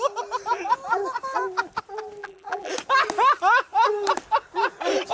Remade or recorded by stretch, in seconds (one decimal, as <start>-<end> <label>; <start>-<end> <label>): 0.0-2.2 recorded; 2.2-2.7 remade; 2.7-5.1 recorded